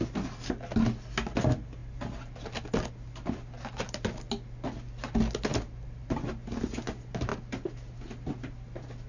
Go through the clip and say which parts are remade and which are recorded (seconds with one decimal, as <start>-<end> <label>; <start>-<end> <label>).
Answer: 0.0-5.5 recorded; 5.5-6.3 remade; 6.3-9.1 recorded